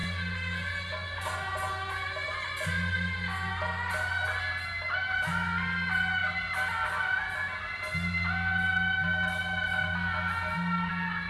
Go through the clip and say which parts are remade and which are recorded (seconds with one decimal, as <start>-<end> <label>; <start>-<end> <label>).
0.0-11.3 recorded